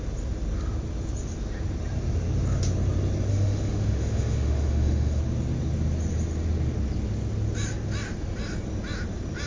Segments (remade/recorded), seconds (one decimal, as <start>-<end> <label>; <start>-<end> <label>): 0.0-3.3 recorded; 3.3-5.2 remade; 5.2-9.5 recorded